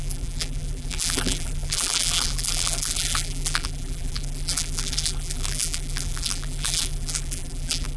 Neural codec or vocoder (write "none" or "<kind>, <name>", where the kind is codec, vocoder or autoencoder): vocoder, BigVGAN v2